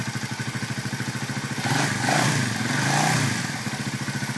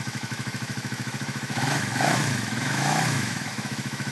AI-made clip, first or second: second